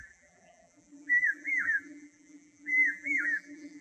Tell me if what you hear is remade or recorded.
remade